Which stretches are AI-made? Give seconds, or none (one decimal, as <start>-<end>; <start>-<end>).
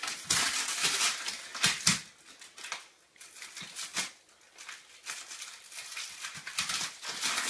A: none